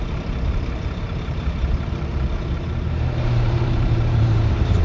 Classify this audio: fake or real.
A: fake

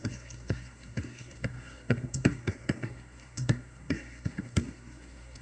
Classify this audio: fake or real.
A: fake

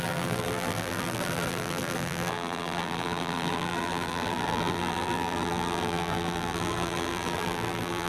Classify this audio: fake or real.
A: fake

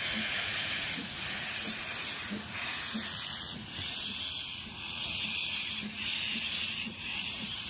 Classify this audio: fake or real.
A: fake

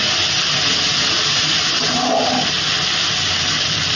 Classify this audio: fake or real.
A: real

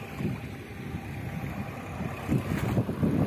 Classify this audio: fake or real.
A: real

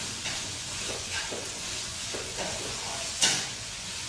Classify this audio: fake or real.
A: fake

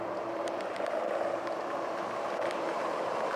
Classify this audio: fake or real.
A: fake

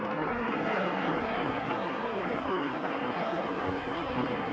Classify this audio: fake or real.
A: fake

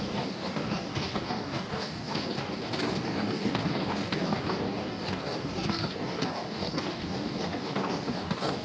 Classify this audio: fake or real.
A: fake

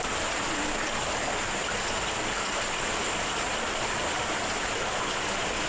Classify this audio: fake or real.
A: real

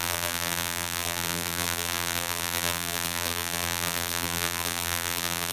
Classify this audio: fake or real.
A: fake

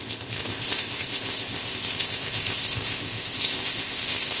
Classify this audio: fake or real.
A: fake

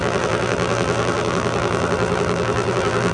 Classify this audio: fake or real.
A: fake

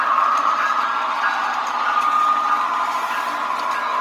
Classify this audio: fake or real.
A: real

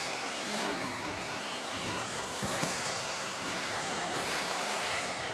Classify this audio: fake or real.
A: fake